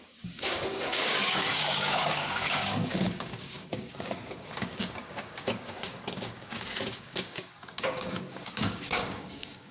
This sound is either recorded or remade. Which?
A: remade